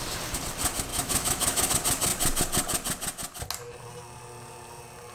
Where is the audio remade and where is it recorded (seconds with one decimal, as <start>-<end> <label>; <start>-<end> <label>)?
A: 0.0-0.9 recorded; 0.9-1.7 remade; 1.7-5.1 recorded